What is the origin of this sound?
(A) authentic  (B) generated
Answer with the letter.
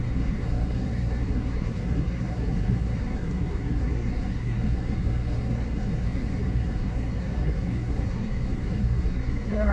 B